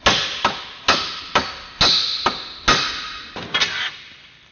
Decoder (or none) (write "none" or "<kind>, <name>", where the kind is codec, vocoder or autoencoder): none